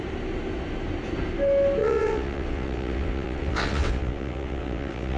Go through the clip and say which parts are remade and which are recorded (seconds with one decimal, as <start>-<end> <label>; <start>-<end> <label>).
0.0-1.8 recorded; 1.8-5.2 remade